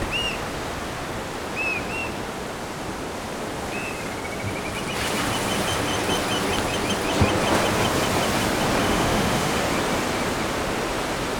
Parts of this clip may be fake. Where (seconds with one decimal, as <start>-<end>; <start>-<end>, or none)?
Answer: 8.8-9.6